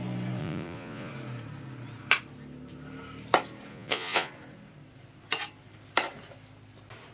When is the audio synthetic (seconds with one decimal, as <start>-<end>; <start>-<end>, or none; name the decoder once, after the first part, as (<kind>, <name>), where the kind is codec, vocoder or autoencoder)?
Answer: 0.4-1.1 (vocoder, Vocos); 3.7-4.3